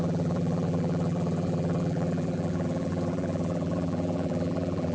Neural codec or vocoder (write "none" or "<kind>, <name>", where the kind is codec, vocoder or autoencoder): vocoder, BigVGAN v2